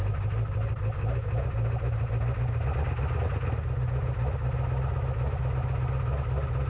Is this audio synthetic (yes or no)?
no